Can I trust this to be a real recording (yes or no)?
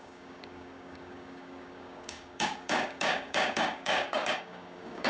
no